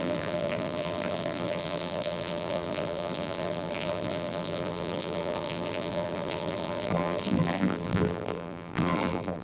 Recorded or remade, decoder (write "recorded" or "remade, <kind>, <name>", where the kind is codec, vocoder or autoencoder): remade, vocoder, BigVGAN v2